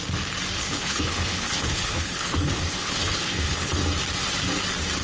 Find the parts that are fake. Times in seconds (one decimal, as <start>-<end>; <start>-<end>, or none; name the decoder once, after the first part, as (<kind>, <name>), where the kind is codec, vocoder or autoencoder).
0.6-3.8 (codec, HILCodec)